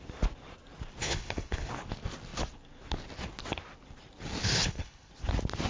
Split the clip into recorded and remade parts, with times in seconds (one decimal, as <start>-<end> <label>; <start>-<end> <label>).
0.0-1.0 recorded; 1.0-1.7 remade; 1.7-4.4 recorded; 4.4-5.1 remade; 5.1-5.7 recorded